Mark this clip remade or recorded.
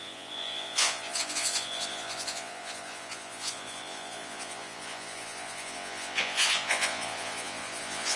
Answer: remade